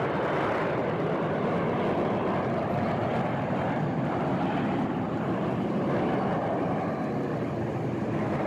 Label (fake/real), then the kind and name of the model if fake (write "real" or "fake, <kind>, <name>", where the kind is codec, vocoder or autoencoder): real